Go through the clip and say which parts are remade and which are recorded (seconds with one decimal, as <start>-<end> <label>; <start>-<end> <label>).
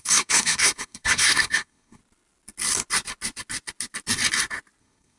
0.0-2.0 remade; 2.0-4.8 recorded; 4.8-5.2 remade